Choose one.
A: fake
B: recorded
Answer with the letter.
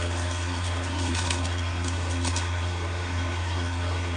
A